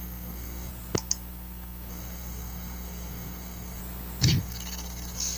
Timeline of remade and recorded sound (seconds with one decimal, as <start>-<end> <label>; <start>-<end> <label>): 0.0-0.7 remade; 0.7-1.9 recorded; 1.9-3.8 remade; 3.8-4.4 recorded; 4.4-5.4 remade